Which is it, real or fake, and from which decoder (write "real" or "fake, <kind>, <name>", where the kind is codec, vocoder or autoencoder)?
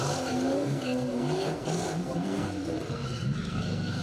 fake, codec, SNAC